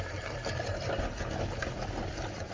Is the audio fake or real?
fake